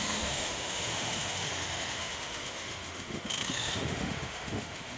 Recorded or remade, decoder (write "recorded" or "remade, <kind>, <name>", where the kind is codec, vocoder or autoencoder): remade, autoencoder, DAC-VAE